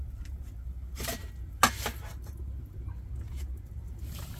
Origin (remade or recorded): recorded